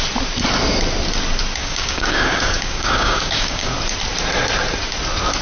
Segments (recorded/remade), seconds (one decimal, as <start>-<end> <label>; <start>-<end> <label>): 0.0-1.6 recorded; 1.6-3.7 remade; 3.7-5.4 recorded